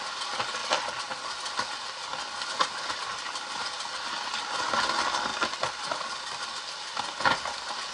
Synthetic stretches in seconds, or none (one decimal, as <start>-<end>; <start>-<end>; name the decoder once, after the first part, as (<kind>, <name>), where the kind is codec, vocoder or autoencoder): none